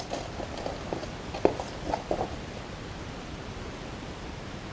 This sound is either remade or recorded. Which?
recorded